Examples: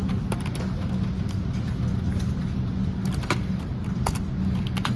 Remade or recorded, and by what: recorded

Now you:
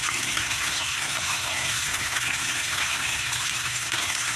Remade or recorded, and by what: remade, codec, SNAC